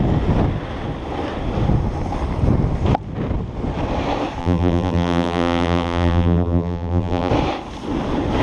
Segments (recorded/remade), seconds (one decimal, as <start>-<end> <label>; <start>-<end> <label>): 0.0-4.4 recorded; 4.4-7.3 remade; 7.3-8.4 recorded

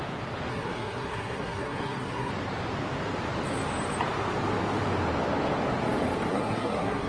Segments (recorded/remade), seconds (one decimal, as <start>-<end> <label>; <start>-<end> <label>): 0.0-0.5 recorded; 0.5-2.3 remade; 2.3-6.3 recorded; 6.3-7.1 remade